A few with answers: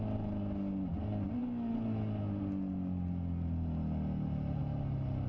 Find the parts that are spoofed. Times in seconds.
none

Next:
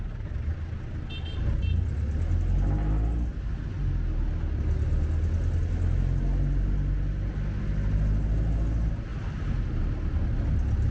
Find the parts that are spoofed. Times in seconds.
none

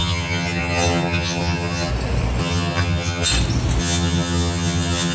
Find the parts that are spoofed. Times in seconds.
0.0-1.9 (vocoder, HiFi-GAN); 2.4-3.3; 3.8-5.1